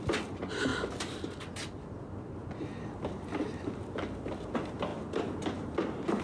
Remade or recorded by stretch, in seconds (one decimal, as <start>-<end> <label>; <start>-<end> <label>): 0.0-6.2 recorded